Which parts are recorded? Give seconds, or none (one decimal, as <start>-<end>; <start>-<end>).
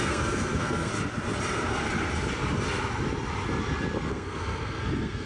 0.9-4.1